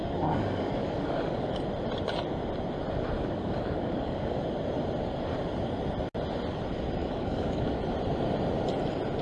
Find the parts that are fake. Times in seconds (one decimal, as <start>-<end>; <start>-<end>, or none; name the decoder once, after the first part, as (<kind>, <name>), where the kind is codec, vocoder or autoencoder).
0.0-1.5 (codec, DAC); 3.2-4.4; 7.0-7.8